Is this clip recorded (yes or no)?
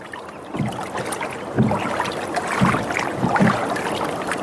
yes